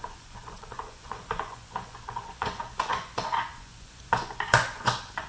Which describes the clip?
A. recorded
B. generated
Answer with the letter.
B